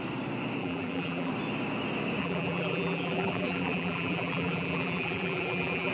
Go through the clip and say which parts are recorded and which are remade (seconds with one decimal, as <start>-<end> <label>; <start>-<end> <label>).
0.0-0.6 recorded; 0.6-1.3 remade; 1.3-2.2 recorded; 2.2-5.9 remade